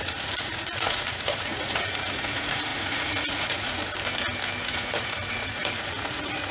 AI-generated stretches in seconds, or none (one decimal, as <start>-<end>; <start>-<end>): 0.0-3.8; 4.7-6.5